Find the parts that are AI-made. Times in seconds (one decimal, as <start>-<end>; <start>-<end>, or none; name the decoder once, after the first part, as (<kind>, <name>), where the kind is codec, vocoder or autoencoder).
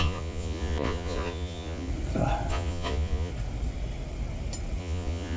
0.0-1.9 (vocoder, Vocos); 2.5-3.3; 4.8-5.4